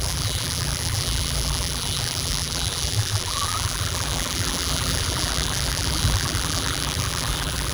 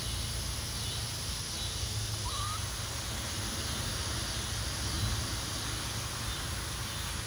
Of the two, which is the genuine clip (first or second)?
second